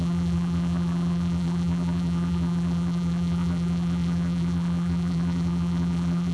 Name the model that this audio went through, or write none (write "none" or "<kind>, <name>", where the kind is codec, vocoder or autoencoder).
vocoder, BigVGAN v2